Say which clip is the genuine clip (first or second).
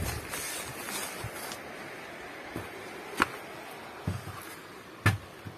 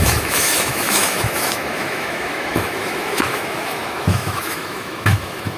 first